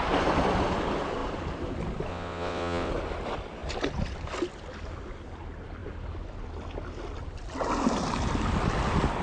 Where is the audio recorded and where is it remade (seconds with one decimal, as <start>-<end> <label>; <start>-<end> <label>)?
0.0-2.1 recorded; 2.1-2.9 remade; 2.9-9.2 recorded